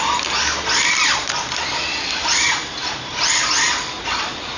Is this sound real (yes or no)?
yes